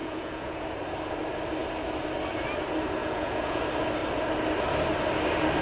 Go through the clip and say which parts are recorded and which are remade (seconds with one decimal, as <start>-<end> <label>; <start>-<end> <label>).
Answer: 0.0-0.6 remade; 0.6-3.0 recorded; 3.0-3.6 remade; 3.6-5.6 recorded